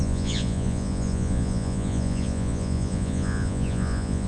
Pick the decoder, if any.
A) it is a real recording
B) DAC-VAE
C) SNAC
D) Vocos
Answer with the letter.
D